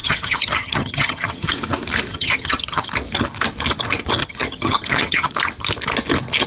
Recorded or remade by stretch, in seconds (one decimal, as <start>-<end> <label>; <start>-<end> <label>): 0.0-1.5 remade; 1.5-2.1 recorded; 2.1-2.9 remade; 2.9-4.2 recorded; 4.2-5.3 remade; 5.3-6.5 recorded